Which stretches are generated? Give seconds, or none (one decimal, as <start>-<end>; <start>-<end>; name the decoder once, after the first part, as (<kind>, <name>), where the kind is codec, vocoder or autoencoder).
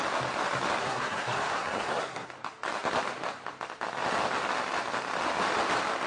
0.8-2.3 (codec, SNAC)